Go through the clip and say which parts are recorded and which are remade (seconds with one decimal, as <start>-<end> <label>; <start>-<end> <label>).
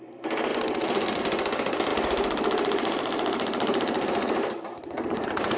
0.0-1.9 recorded; 1.9-5.6 remade